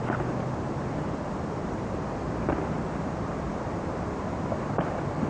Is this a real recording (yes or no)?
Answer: yes